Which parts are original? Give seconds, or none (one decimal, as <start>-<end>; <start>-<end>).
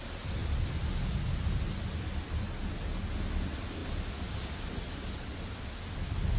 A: 0.0-6.4